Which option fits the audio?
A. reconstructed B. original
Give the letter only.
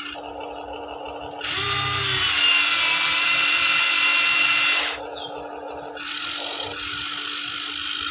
B